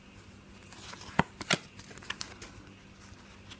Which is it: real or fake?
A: real